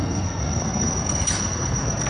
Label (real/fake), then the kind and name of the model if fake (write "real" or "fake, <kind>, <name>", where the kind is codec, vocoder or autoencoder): fake, codec, SNAC